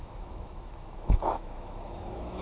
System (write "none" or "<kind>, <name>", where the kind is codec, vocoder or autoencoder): autoencoder, DAC-VAE